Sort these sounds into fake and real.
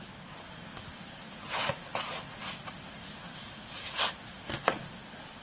real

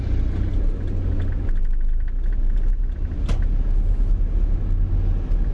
real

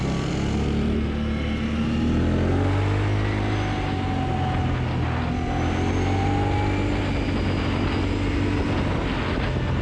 real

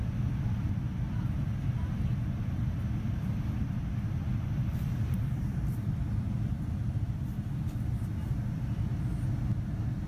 real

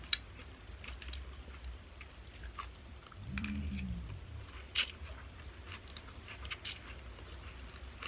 fake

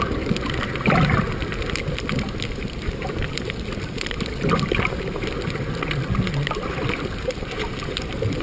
real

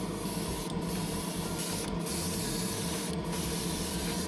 real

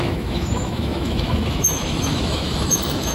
fake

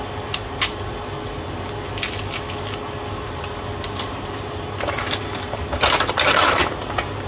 real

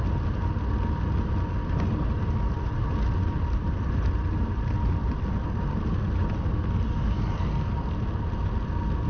real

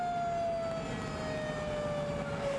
real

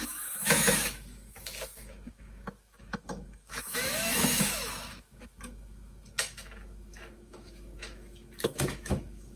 fake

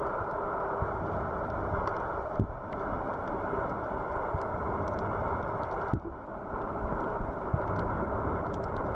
real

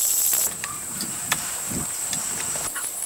fake